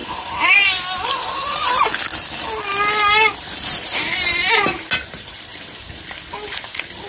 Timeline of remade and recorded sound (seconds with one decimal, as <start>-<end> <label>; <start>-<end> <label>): 0.0-1.7 remade; 1.7-2.1 recorded; 2.1-4.5 remade; 4.5-7.1 recorded